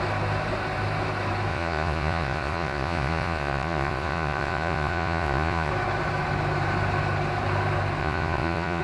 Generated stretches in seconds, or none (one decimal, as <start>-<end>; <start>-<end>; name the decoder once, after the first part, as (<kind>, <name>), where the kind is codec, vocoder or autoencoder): 1.5-5.7 (vocoder, Vocos); 8.0-8.8

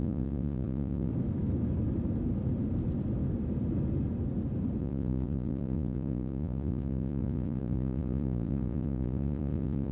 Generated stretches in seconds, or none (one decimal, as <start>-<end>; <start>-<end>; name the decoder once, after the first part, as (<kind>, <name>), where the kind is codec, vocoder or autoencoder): 0.0-1.1 (vocoder, Vocos); 4.8-9.9

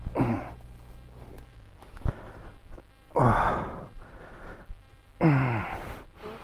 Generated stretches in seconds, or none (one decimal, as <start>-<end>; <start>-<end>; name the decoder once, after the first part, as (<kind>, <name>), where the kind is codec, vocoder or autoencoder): 1.3-2.1 (autoencoder, DAC-VAE)

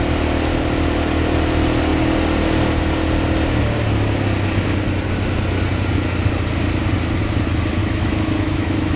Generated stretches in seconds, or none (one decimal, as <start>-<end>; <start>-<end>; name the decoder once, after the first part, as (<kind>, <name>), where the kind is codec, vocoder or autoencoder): 7.8-9.0 (autoencoder, DAC-VAE)

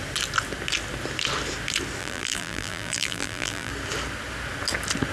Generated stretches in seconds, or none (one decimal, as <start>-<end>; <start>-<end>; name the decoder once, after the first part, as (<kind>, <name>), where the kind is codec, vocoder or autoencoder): 2.0-3.7 (vocoder, BigVGAN v2)